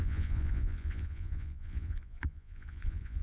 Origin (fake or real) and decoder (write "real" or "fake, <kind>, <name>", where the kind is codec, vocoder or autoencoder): fake, vocoder, Vocos